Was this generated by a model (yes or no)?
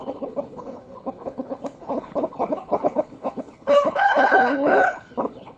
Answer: yes